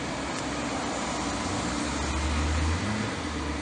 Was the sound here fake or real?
real